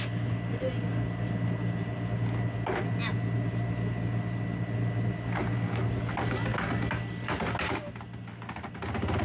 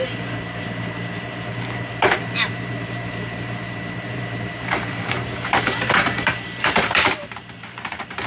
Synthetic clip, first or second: second